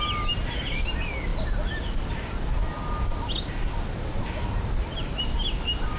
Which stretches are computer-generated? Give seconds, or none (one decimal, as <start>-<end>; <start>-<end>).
none